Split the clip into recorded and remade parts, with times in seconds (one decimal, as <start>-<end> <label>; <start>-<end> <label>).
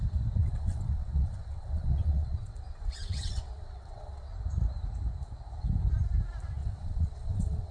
0.0-0.4 recorded; 0.4-4.3 remade; 4.3-6.6 recorded; 6.6-7.7 remade